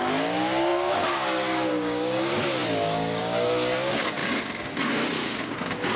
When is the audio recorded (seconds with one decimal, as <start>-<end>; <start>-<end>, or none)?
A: none